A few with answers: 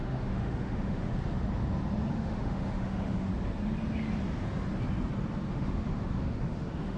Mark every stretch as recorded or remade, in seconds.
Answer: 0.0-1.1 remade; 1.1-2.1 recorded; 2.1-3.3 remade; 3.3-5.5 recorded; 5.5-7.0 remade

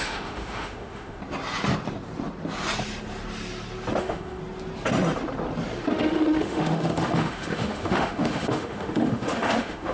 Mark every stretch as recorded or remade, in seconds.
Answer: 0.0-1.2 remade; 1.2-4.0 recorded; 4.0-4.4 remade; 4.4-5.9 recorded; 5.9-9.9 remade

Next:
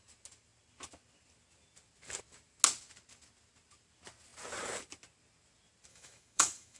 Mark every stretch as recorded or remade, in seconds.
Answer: 0.0-5.9 recorded; 5.9-6.8 remade

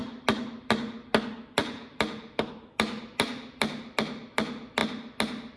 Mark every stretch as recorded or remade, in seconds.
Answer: 0.0-5.6 recorded

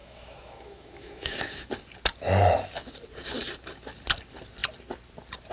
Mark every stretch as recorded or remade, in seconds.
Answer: 0.0-1.7 remade; 1.7-5.5 recorded